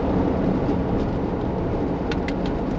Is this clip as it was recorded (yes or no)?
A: yes